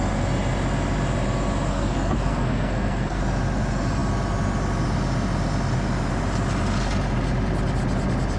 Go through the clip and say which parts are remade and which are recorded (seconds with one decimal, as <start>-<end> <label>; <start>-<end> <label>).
0.0-1.7 recorded; 1.7-3.2 remade; 3.2-8.4 recorded